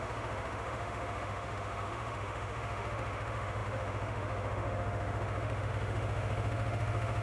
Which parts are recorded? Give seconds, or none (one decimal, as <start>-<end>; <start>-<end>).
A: none